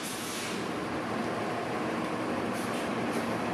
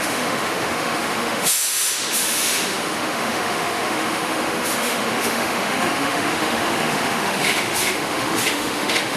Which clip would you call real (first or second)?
first